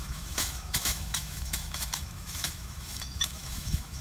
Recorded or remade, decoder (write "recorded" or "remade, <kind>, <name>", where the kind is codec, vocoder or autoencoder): remade, autoencoder, DAC-VAE